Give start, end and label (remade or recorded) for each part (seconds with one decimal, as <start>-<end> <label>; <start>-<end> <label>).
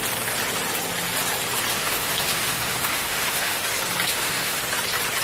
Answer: 0.0-1.7 recorded; 1.7-3.6 remade; 3.6-4.1 recorded; 4.1-4.6 remade; 4.6-5.2 recorded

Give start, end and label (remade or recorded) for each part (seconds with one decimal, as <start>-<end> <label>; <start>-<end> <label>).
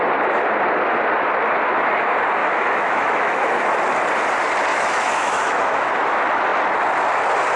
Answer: 0.0-2.4 recorded; 2.4-3.7 remade; 3.7-4.7 recorded; 4.7-5.9 remade; 5.9-7.6 recorded